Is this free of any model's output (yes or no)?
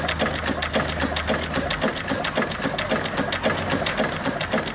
yes